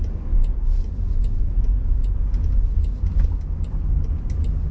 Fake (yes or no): no